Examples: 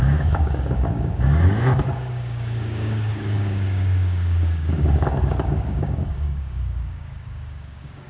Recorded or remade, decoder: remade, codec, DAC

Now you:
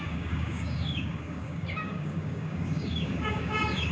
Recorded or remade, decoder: remade, codec, DAC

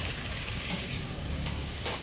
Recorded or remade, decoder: remade, codec, DAC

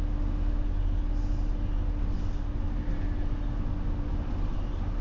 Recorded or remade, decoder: recorded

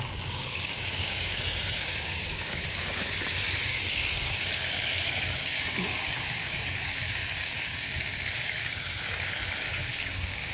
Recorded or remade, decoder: remade, codec, DAC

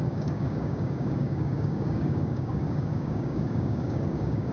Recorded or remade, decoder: remade, codec, DAC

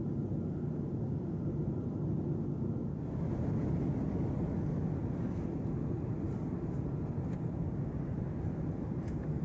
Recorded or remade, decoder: recorded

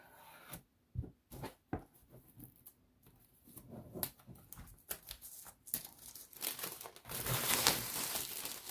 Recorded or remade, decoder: recorded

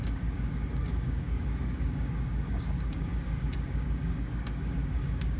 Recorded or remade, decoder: remade, codec, DAC